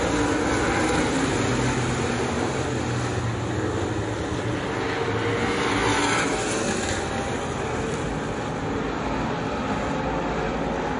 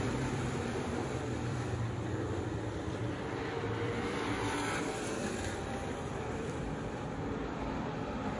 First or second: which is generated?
second